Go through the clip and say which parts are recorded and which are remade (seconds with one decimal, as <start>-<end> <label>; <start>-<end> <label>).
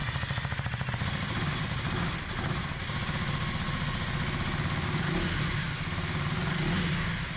0.0-7.4 recorded